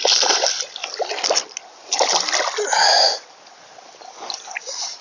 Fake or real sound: real